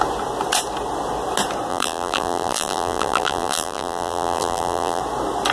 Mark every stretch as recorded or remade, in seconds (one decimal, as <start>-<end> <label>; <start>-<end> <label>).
0.0-1.7 recorded; 1.7-5.0 remade; 5.0-5.5 recorded